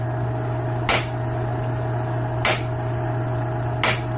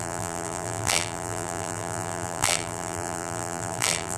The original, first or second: first